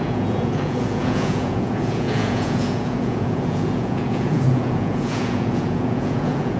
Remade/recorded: remade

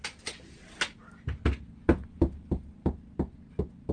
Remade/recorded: recorded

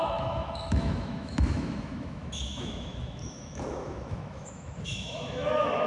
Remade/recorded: remade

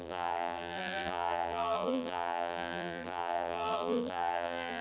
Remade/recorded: remade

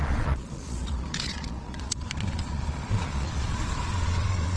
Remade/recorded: remade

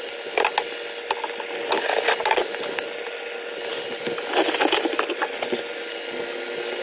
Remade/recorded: recorded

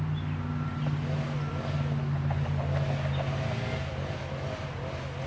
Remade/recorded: recorded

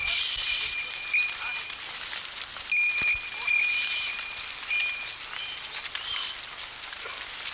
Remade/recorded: recorded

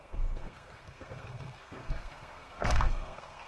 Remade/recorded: remade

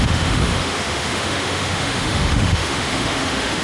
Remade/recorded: remade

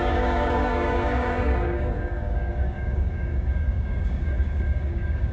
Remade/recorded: remade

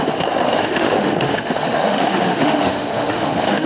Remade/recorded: remade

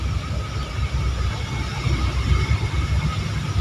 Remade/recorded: recorded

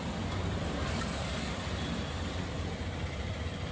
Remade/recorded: remade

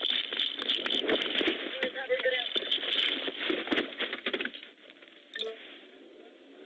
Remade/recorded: recorded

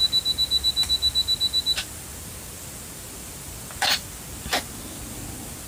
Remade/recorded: recorded